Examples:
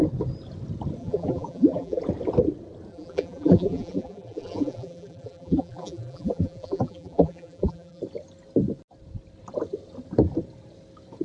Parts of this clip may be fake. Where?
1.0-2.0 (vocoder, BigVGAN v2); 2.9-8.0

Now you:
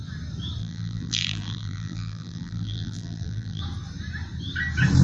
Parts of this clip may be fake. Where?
0.6-3.6 (vocoder, BigVGAN v2)